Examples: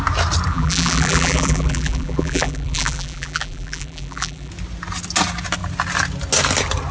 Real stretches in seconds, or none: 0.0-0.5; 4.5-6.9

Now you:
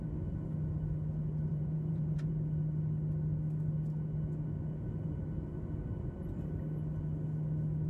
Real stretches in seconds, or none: 0.0-1.5; 2.3-7.9

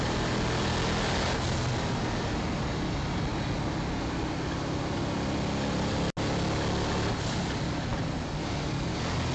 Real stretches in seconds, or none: 0.0-9.3

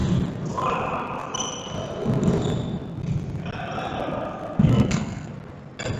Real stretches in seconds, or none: 0.0-4.7; 5.3-6.0